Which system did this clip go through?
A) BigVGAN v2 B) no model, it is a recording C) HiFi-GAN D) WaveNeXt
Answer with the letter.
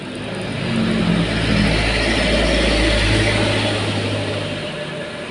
B